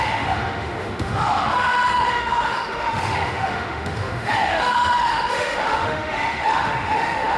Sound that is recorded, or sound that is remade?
remade